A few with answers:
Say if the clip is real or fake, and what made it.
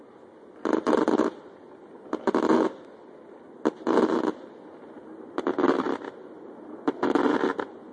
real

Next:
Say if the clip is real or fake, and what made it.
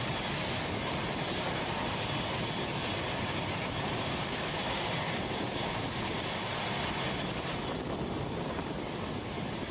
real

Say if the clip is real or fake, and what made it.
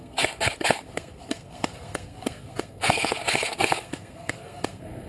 fake, codec, SNAC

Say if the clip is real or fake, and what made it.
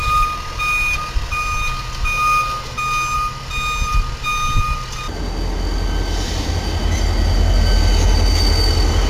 real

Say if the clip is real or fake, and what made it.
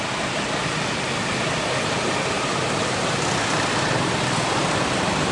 real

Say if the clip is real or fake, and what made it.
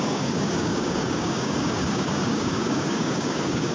fake, codec, DAC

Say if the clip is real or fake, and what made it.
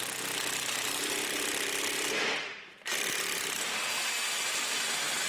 real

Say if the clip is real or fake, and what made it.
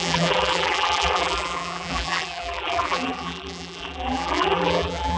fake, vocoder, BigVGAN v2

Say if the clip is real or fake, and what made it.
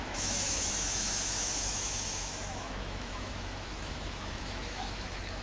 fake, autoencoder, DAC-VAE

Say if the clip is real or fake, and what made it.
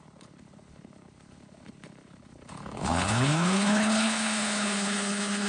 fake, codec, HILCodec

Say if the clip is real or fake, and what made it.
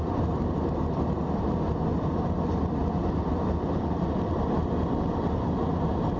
fake, vocoder, BigVGAN v2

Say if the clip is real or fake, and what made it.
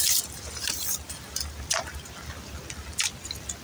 real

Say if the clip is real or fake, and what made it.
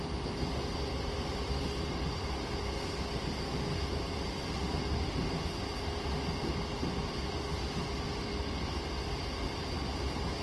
real